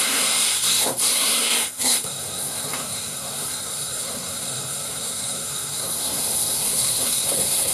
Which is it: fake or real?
fake